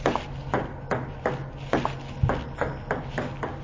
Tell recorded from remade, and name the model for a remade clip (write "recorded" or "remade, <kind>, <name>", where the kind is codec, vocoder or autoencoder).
recorded